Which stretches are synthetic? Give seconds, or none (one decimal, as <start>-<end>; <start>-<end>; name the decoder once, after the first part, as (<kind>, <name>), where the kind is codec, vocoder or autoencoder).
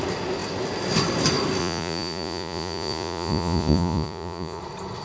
1.6-4.6 (vocoder, Vocos)